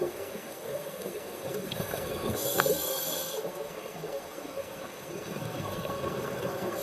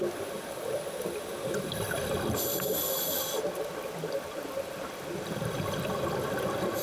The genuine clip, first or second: second